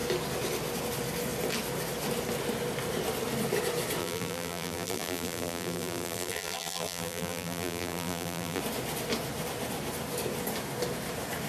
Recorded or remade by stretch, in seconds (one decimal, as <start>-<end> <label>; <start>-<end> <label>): 0.0-4.0 recorded; 4.0-8.6 remade; 8.6-11.5 recorded